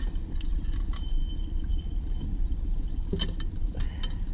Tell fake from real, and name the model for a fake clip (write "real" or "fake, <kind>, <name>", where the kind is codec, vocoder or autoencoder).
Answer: real